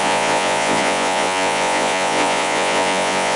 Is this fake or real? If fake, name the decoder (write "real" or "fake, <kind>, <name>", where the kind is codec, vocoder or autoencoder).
fake, vocoder, Vocos